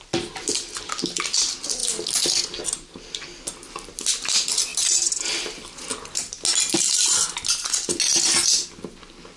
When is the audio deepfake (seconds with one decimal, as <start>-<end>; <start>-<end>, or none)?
none